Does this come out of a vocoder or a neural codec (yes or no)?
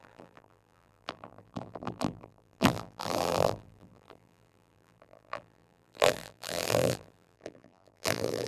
yes